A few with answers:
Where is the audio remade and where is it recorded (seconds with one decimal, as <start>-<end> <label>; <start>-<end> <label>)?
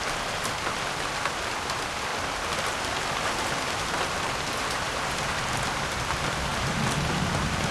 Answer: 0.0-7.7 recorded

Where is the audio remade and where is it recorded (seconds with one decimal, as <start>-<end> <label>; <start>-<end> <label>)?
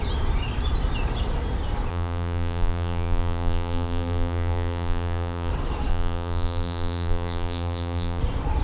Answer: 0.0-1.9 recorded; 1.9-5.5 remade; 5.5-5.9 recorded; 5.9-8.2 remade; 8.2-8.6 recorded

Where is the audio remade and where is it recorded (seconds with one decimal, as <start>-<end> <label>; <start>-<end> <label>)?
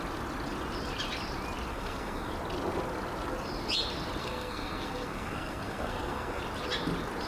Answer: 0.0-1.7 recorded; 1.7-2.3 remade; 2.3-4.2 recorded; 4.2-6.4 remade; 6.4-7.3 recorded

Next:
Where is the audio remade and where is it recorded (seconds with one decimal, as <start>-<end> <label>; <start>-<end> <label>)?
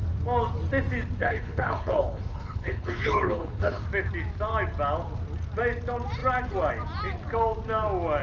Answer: 0.0-1.2 recorded; 1.2-3.8 remade; 3.8-8.2 recorded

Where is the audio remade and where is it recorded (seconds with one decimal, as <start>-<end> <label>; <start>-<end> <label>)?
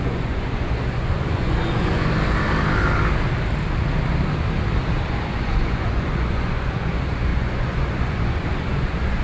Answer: 0.0-2.1 remade; 2.1-5.1 recorded; 5.1-9.2 remade